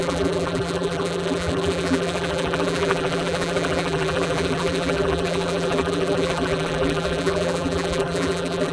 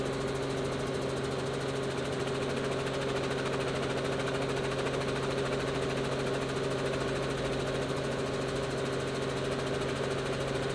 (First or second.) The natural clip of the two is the second